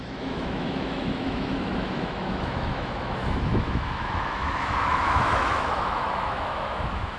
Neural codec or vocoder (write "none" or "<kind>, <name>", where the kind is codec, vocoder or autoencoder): autoencoder, DAC-VAE